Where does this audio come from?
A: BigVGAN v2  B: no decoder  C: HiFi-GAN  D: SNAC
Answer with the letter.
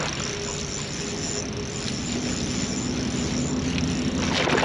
B